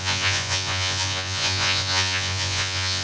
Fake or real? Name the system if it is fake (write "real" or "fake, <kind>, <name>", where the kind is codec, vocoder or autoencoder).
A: fake, vocoder, Vocos